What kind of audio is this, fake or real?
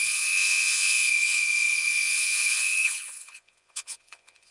fake